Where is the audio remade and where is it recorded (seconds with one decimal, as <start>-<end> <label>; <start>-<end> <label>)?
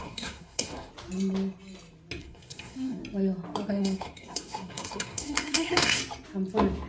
0.0-0.9 remade; 0.9-2.2 recorded; 2.2-3.0 remade; 3.0-3.7 recorded; 3.7-6.0 remade; 6.0-6.9 recorded